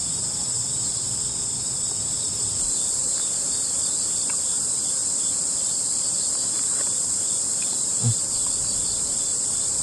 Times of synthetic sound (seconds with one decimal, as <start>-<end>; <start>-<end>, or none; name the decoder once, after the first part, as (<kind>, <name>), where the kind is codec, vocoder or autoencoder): 0.7-3.0 (vocoder, BigVGAN v2); 3.6-9.8